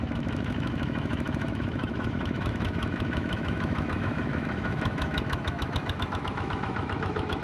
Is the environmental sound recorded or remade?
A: remade